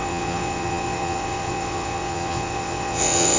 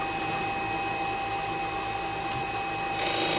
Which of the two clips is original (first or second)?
second